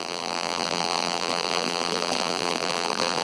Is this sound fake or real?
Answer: fake